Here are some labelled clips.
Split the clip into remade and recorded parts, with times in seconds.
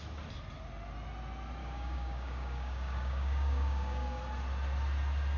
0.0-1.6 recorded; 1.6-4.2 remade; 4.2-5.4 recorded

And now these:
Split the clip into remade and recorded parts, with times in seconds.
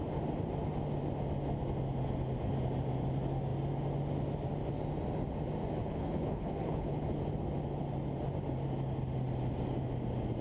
0.0-5.8 recorded; 5.8-7.1 remade; 7.1-10.4 recorded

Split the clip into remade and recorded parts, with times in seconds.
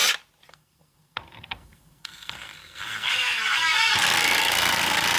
0.0-0.5 recorded; 0.5-5.2 remade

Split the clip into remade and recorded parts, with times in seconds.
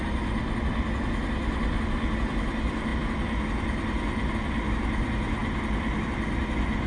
0.0-6.9 recorded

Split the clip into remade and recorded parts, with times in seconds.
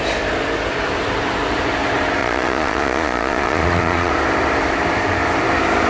0.0-2.2 recorded; 2.2-4.1 remade; 4.1-5.9 recorded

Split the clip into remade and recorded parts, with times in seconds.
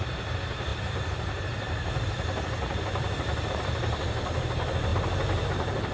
0.0-4.9 remade; 4.9-5.5 recorded; 5.5-5.9 remade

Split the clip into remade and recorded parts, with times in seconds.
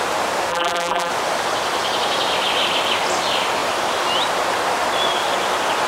0.0-0.5 recorded; 0.5-1.1 remade; 1.1-5.9 recorded